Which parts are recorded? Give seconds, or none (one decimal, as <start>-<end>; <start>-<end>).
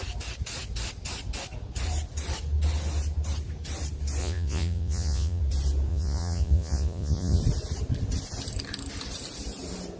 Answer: 0.0-4.2; 5.4-5.9; 7.4-10.0